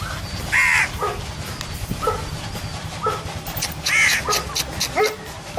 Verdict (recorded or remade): recorded